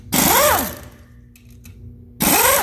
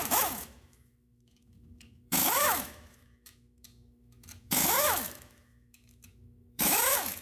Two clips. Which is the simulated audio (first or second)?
second